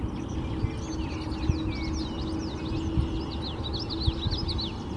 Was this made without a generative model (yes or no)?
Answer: yes